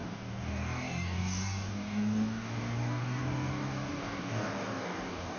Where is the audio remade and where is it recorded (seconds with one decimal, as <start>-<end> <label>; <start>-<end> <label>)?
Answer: 0.0-5.4 remade